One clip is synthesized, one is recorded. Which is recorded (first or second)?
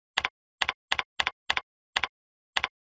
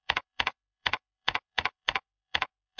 first